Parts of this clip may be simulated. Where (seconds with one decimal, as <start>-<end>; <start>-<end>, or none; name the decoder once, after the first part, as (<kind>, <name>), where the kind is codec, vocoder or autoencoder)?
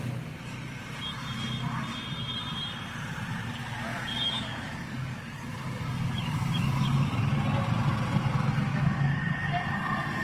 3.9-7.3 (codec, DAC); 8.7-9.5